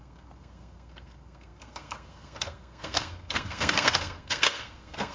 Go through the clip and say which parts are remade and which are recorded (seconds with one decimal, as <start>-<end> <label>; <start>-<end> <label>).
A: 0.0-5.1 remade